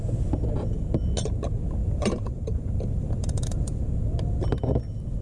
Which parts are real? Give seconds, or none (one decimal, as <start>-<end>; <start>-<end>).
0.0-1.8; 3.8-5.2